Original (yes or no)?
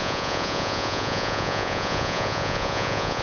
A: no